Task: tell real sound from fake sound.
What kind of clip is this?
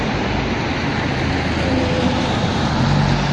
real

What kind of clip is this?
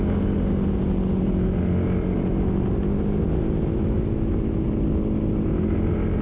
real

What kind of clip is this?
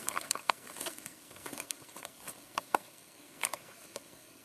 fake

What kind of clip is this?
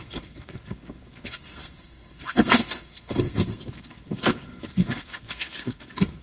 fake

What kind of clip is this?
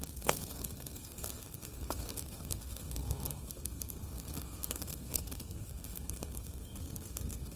fake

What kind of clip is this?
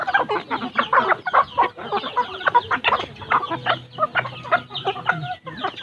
real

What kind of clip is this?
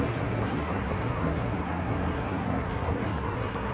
fake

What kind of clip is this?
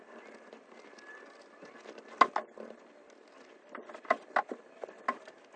real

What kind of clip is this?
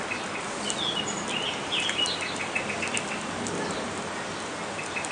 real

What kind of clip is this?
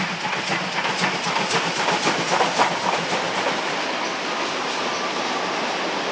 real